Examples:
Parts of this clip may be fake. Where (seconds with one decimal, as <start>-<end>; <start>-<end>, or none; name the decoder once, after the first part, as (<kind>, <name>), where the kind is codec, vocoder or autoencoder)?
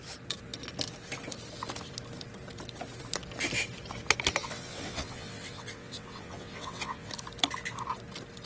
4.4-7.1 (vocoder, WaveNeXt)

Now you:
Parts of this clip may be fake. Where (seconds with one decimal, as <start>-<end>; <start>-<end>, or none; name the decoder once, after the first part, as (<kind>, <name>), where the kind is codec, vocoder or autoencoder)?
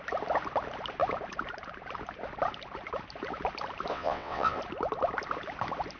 3.9-4.6 (vocoder, WaveNeXt)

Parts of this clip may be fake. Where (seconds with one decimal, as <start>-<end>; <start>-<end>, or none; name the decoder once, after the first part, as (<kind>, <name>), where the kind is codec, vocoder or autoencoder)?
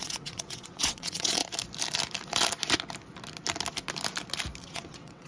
0.0-1.4 (vocoder, WaveNeXt); 4.6-5.3